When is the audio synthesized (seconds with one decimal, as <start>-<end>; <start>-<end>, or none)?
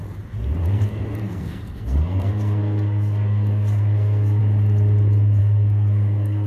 0.6-4.4; 5.4-6.5